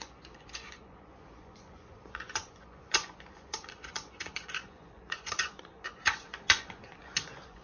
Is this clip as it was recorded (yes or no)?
no